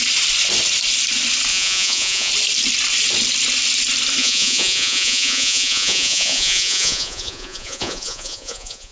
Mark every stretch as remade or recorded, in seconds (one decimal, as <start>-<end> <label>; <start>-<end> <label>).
0.0-1.5 recorded; 1.5-2.3 remade; 2.3-4.2 recorded; 4.2-8.9 remade